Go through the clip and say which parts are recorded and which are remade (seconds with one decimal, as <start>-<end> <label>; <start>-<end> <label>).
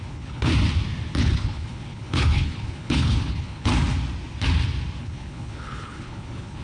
0.0-0.5 remade; 0.5-1.2 recorded; 1.2-3.7 remade; 3.7-5.0 recorded; 5.0-6.6 remade